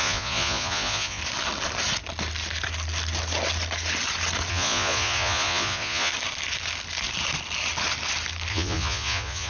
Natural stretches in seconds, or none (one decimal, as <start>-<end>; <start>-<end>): 1.2-4.5; 6.1-8.5